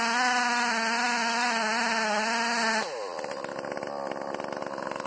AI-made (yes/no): no